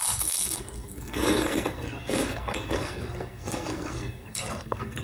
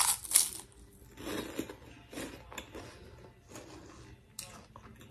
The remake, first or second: first